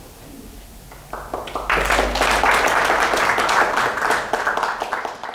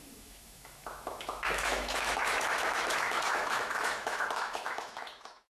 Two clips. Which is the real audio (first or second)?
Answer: first